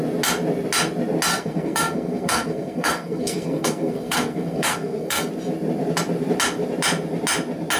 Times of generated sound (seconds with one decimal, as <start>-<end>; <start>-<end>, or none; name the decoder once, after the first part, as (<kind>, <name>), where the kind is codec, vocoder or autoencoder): 1.3-5.3 (codec, SNAC)